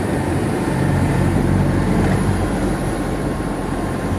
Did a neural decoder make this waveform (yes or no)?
yes